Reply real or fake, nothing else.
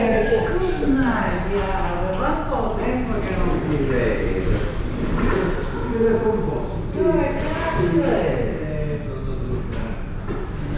real